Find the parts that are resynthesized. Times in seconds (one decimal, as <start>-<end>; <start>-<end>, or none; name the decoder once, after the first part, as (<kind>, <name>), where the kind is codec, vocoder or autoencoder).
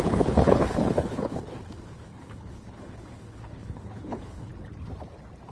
0.0-4.5 (codec, HILCodec)